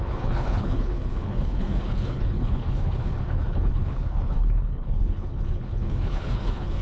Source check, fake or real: fake